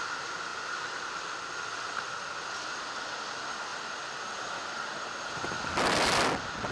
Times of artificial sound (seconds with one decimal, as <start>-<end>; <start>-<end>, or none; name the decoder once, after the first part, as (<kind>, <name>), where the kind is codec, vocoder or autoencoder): 0.5-1.4 (vocoder, BigVGAN v2); 3.7-6.3